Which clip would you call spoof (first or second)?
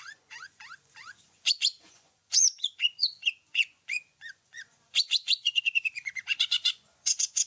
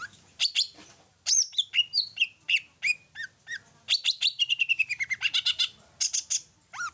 first